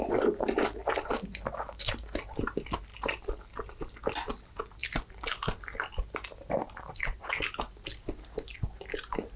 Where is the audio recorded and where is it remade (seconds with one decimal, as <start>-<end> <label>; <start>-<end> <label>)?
0.0-9.4 recorded